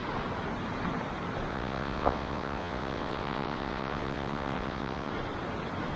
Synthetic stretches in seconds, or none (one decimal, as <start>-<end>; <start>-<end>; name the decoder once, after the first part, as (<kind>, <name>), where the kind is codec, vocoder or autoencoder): 1.5-5.1 (vocoder, WaveNeXt)